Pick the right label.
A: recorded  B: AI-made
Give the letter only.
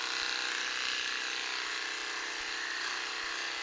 A